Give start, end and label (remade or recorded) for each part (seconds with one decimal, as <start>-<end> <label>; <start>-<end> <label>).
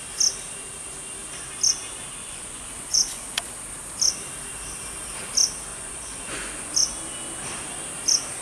0.0-2.2 recorded; 2.2-3.5 remade; 3.5-5.7 recorded; 5.7-6.7 remade; 6.7-8.4 recorded